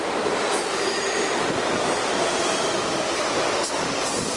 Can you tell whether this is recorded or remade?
recorded